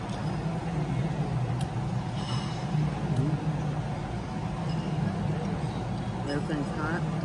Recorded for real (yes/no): yes